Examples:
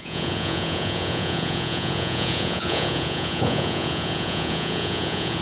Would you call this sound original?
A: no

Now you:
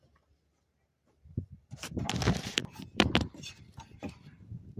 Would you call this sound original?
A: no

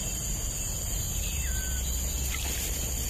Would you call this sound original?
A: yes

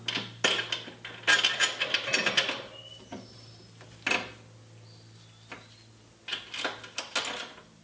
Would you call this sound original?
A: yes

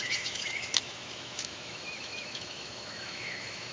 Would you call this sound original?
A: no